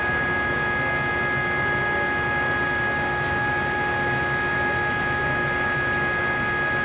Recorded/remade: recorded